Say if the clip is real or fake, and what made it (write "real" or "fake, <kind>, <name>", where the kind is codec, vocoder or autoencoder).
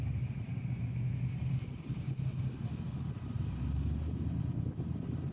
real